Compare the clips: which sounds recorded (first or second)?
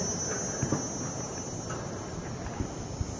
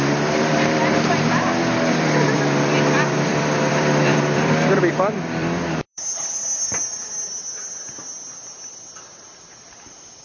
first